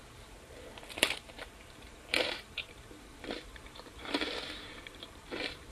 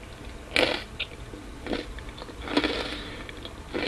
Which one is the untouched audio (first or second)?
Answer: second